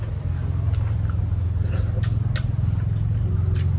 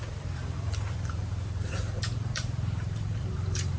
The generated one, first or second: second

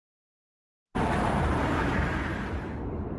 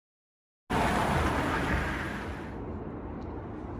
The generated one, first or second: first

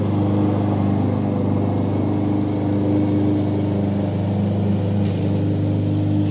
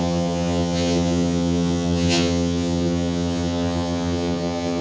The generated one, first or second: second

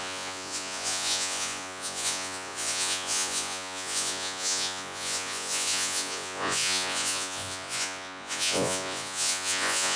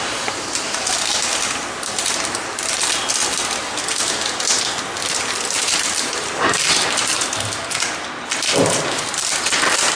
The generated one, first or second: first